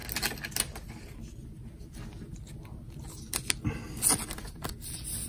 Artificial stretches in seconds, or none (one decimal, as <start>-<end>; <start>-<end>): none